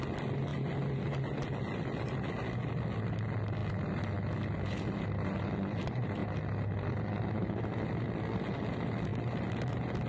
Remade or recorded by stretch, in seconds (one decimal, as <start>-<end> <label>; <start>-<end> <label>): 0.0-10.1 recorded